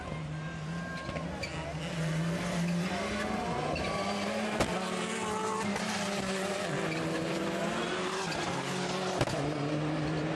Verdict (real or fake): real